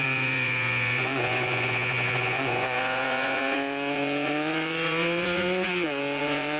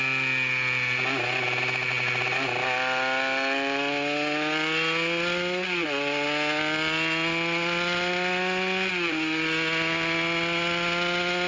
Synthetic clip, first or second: first